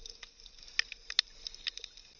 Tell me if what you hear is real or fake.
real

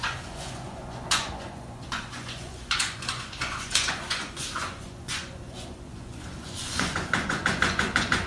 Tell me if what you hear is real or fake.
fake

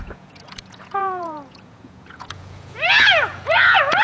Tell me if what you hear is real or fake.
fake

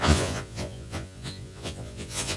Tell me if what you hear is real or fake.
fake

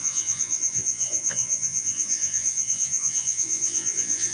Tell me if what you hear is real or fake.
fake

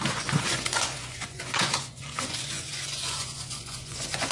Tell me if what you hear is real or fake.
fake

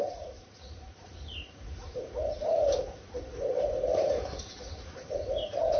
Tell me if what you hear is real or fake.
fake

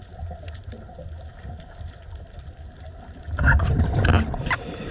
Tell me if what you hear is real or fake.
real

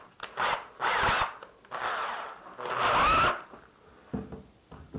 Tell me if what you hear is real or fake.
real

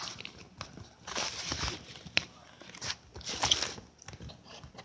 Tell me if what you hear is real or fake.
real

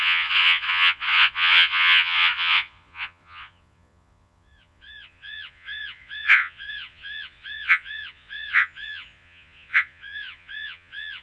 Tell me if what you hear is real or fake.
fake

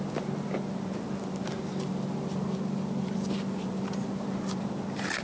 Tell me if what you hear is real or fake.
real